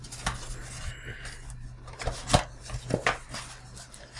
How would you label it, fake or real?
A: real